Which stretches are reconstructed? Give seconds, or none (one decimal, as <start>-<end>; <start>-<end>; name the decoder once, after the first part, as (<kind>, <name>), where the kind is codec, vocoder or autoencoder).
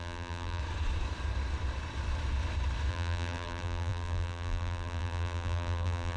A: 0.0-0.6 (vocoder, BigVGAN v2); 2.9-6.2